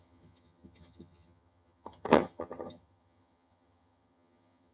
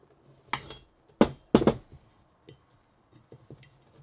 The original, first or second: second